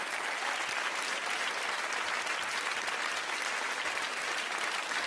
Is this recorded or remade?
recorded